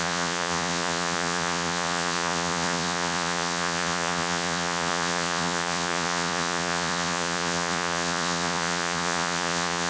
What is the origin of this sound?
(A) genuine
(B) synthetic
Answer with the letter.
B